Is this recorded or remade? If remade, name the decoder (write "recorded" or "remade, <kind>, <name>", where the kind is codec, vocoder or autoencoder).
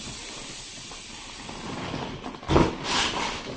recorded